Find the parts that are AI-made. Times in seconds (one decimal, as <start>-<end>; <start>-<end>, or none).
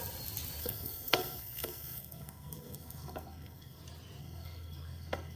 0.6-3.8; 4.2-5.4